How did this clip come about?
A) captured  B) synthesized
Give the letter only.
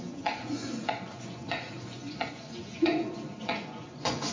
B